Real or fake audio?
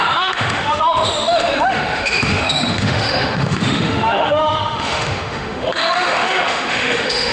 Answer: fake